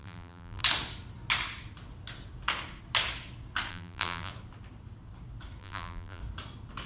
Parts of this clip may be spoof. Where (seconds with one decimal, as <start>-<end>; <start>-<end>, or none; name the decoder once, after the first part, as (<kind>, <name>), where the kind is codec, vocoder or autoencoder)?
0.0-0.6 (vocoder, BigVGAN v2); 3.7-4.3; 5.6-6.2